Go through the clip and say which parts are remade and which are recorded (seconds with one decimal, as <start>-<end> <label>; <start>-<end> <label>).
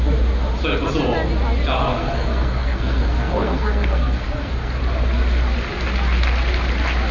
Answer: 0.0-1.9 recorded; 1.9-4.8 remade; 4.8-7.1 recorded